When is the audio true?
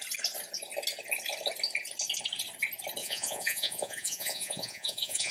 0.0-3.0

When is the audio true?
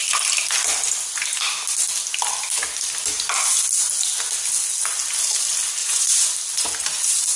0.0-5.8; 6.3-7.4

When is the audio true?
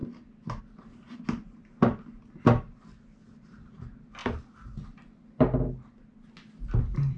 0.0-7.2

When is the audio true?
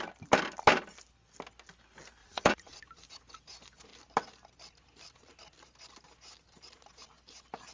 0.0-2.2; 2.8-7.7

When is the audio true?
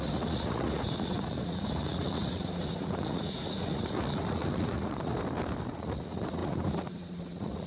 5.1-5.7